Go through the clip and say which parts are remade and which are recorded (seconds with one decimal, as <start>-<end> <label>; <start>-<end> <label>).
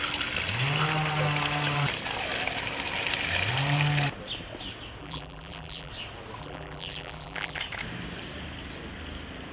0.0-5.0 recorded; 5.0-5.9 remade; 5.9-6.4 recorded; 6.4-7.6 remade; 7.6-9.5 recorded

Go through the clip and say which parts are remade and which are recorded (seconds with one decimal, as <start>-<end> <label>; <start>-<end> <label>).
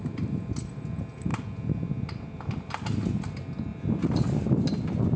0.0-5.2 recorded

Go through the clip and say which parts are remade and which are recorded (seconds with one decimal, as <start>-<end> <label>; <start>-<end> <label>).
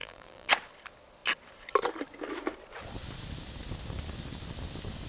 0.0-0.5 remade; 0.5-5.1 recorded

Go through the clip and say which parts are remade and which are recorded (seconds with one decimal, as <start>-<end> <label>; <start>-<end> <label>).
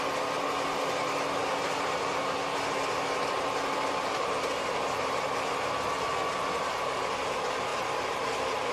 0.0-8.7 recorded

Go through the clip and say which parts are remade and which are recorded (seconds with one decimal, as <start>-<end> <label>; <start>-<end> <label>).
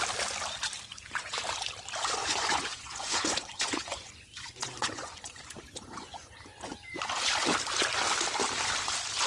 0.0-0.9 recorded; 0.9-1.4 remade; 1.4-2.2 recorded; 2.2-6.3 remade; 6.3-9.3 recorded